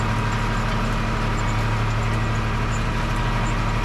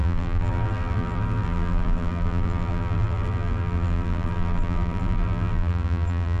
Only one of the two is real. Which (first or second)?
first